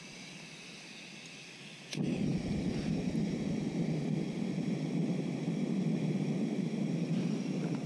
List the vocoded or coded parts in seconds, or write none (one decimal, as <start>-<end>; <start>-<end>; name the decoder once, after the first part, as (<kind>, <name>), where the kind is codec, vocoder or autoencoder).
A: none